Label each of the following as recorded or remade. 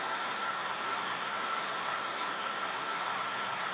remade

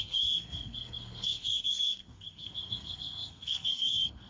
remade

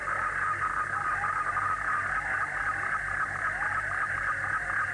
recorded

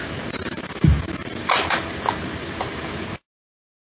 recorded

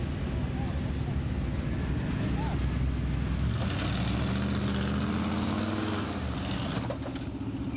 recorded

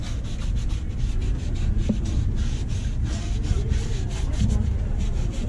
recorded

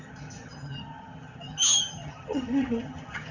remade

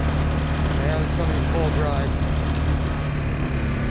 recorded